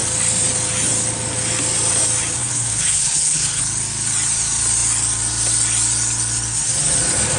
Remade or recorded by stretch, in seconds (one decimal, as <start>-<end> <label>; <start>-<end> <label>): 0.0-2.4 recorded; 2.4-3.6 remade; 3.6-7.4 recorded